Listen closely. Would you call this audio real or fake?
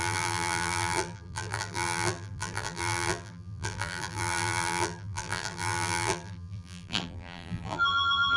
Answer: fake